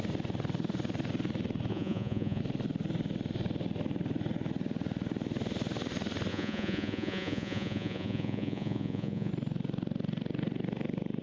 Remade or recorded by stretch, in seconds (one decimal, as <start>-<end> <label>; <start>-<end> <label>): 0.0-1.7 recorded; 1.7-2.4 remade; 2.4-6.3 recorded; 6.3-9.3 remade; 9.3-11.2 recorded